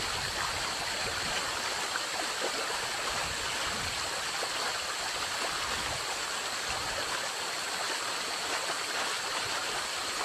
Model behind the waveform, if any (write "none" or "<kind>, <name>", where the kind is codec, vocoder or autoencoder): none